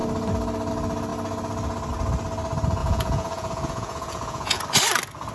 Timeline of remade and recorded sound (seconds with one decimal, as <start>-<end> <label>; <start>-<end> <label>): 0.0-2.8 recorded; 2.8-4.6 remade; 4.6-5.3 recorded